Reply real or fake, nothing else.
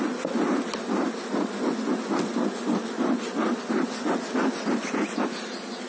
real